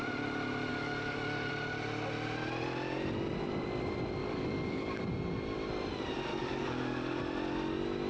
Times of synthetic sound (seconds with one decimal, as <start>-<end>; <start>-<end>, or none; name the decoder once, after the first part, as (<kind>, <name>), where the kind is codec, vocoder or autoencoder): 0.7-1.5 (codec, DAC); 4.2-5.0; 6.3-7.2